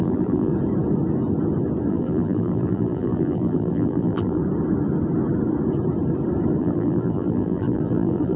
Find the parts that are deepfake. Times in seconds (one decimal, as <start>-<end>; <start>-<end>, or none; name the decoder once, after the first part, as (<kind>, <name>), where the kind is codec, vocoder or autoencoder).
0.0-0.5 (vocoder, BigVGAN v2); 1.9-4.4; 6.6-8.4

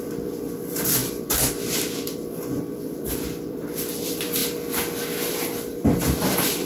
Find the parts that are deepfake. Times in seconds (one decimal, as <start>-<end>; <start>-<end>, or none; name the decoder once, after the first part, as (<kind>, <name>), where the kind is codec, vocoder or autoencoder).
0.0-4.4 (vocoder, BigVGAN v2); 5.2-6.7

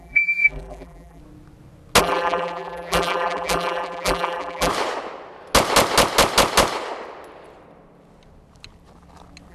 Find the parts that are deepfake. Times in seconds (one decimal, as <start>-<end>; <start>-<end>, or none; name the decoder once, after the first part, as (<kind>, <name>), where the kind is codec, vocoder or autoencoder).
0.0-1.2 (vocoder, BigVGAN v2); 2.0-4.7

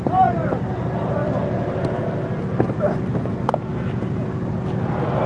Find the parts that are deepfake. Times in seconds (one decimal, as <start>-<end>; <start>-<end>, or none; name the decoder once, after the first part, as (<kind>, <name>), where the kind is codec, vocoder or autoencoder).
none

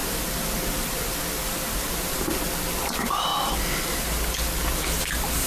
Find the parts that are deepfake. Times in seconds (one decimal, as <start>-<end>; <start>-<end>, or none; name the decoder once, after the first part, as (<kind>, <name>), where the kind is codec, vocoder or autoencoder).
none